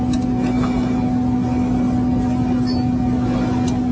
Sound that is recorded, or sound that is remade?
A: recorded